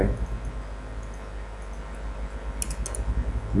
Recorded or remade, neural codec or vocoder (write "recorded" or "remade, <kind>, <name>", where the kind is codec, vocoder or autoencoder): recorded